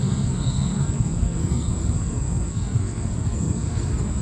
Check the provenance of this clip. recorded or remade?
remade